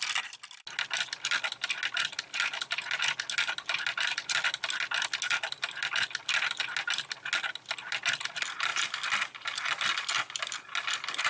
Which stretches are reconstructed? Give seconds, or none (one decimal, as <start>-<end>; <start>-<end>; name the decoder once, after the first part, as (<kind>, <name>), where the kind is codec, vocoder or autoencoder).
none